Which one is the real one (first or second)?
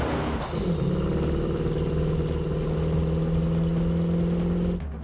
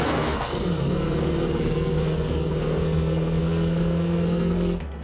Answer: first